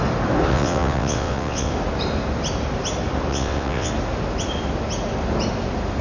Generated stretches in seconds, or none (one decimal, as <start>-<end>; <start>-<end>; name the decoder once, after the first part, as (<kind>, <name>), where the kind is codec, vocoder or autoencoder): 0.5-1.7 (vocoder, WaveNeXt); 3.3-3.9